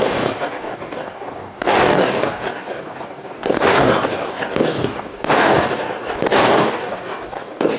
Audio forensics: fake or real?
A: fake